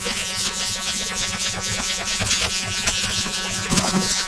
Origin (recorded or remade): remade